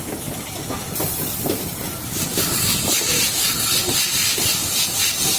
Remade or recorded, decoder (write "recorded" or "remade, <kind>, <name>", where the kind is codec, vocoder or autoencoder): recorded